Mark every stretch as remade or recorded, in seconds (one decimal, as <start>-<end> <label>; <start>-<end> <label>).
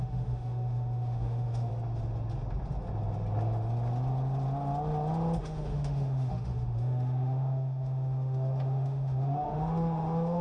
0.0-1.7 remade; 1.7-5.4 recorded; 5.4-10.4 remade